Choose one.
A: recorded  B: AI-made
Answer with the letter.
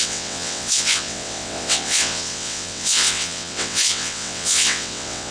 B